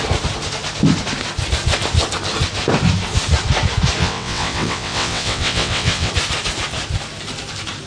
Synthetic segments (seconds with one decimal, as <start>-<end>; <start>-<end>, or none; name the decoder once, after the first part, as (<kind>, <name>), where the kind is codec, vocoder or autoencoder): 4.0-6.1 (vocoder, WaveNeXt)